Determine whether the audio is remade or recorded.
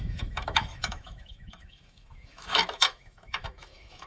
remade